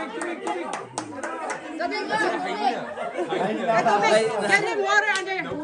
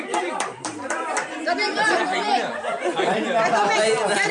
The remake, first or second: second